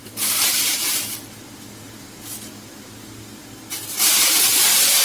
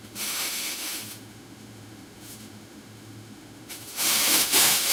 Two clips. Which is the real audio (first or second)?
first